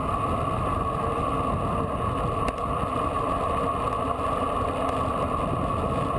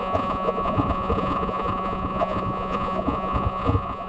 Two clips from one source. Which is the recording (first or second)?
first